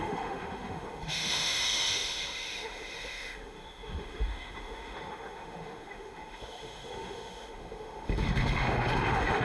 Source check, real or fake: fake